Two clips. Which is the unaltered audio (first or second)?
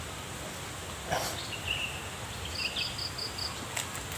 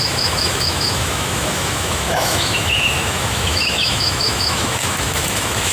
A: first